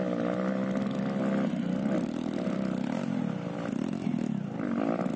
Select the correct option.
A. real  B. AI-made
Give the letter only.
A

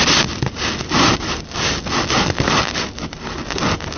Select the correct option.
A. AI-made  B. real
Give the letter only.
B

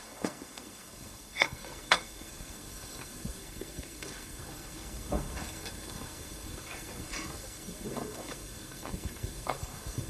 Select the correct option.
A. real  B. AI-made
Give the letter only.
B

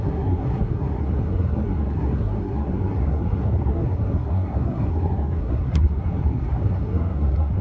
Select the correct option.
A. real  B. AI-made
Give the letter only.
B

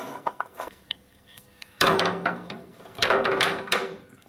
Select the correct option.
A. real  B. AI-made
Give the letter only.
B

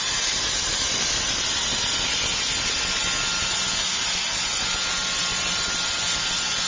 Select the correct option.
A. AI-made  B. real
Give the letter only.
B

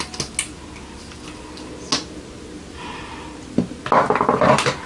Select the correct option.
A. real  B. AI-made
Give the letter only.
A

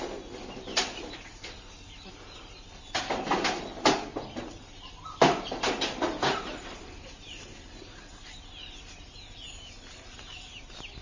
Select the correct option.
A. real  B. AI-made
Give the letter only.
A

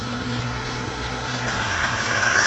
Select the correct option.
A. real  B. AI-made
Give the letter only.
B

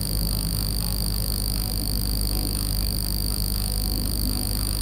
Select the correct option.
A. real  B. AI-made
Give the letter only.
B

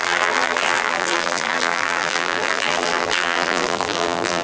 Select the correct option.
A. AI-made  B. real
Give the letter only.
A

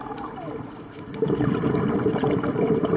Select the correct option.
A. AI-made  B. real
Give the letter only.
A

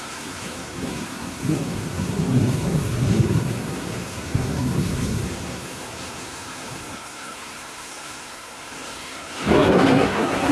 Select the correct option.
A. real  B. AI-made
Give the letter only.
B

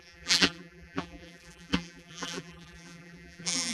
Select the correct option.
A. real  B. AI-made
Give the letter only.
B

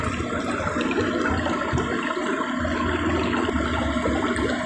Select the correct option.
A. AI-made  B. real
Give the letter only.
B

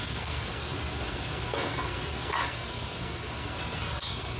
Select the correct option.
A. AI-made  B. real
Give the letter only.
A